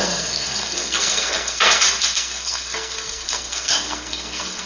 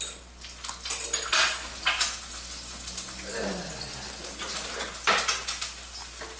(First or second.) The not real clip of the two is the first